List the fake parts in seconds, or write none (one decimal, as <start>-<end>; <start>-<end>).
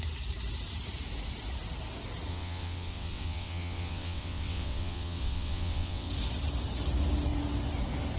2.3-6.1